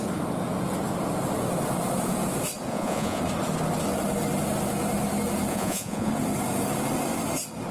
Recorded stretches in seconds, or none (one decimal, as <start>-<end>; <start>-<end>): 0.0-2.7; 3.2-5.5; 6.1-7.7